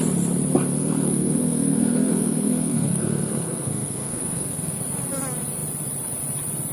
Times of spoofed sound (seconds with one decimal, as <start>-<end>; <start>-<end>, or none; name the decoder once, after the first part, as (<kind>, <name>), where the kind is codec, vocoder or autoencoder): 0.8-4.8 (codec, SNAC)